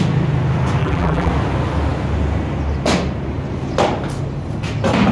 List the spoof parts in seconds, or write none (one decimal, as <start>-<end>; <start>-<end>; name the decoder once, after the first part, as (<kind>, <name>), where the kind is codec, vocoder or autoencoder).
0.8-1.3 (vocoder, BigVGAN v2)